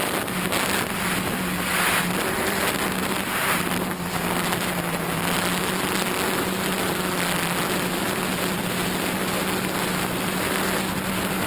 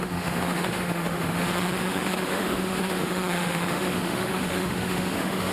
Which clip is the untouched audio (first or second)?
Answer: first